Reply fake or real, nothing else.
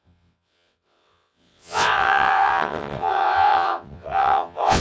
fake